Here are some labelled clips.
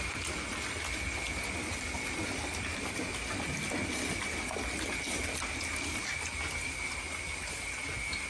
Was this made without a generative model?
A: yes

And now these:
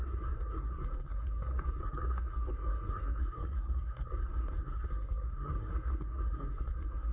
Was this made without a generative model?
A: no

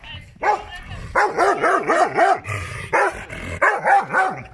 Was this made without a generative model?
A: yes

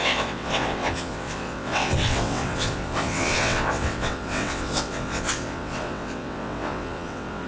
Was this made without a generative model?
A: no